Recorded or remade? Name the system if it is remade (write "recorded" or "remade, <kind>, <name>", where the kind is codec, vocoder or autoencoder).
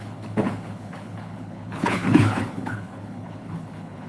remade, codec, HILCodec